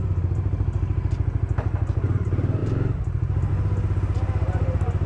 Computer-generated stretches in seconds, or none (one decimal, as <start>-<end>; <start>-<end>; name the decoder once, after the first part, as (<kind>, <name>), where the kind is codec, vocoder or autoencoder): none